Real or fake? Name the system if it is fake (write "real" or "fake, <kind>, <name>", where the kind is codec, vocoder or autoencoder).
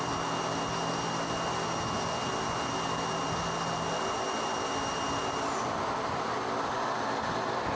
real